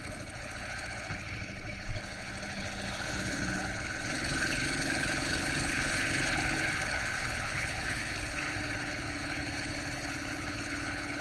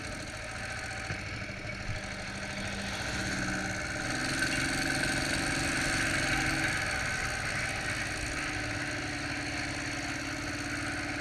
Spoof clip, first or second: first